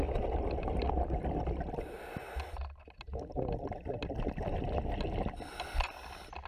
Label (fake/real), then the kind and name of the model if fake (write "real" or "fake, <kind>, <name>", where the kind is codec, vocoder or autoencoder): real